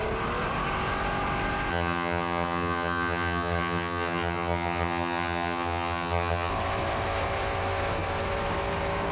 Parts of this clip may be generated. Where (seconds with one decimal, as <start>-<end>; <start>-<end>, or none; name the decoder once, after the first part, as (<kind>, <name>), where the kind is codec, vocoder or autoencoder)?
1.7-6.5 (vocoder, HiFi-GAN)